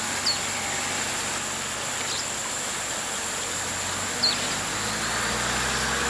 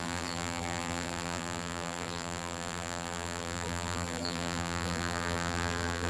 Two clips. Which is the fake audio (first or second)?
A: second